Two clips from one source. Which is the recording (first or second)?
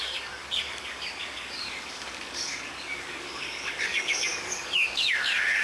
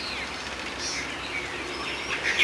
second